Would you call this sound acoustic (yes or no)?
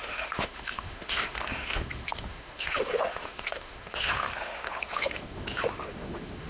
no